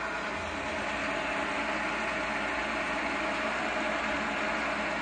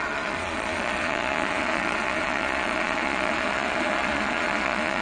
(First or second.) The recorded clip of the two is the first